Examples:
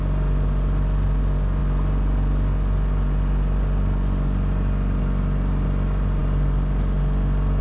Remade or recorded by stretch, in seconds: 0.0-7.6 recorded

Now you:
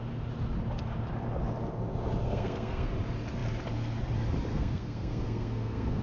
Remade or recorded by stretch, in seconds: 0.0-2.2 recorded; 2.2-2.9 remade; 2.9-4.5 recorded; 4.5-6.0 remade

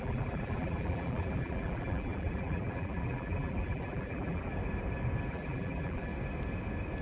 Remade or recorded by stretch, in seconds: 0.0-4.5 remade; 4.5-5.3 recorded; 5.3-6.1 remade; 6.1-7.0 recorded

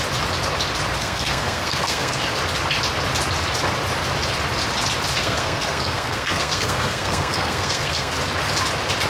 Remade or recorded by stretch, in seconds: 0.0-1.0 recorded; 1.0-2.2 remade; 2.2-5.2 recorded; 5.2-8.1 remade; 8.1-9.1 recorded

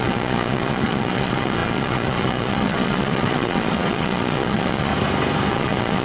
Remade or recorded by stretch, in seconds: 0.0-4.9 remade; 4.9-5.5 recorded; 5.5-6.0 remade

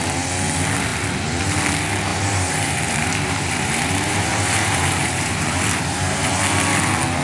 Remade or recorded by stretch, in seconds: 0.0-2.1 recorded; 2.1-6.4 remade; 6.4-7.2 recorded